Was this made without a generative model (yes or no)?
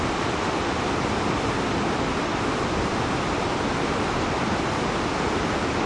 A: yes